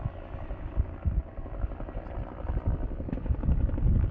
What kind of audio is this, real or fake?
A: real